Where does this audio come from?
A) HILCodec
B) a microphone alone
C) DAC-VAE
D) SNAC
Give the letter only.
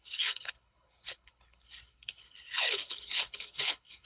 A